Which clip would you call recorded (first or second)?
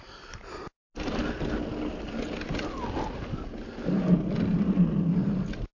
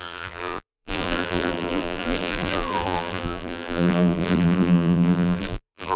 first